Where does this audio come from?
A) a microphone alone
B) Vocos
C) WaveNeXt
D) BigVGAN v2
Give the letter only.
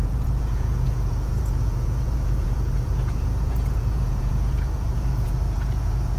B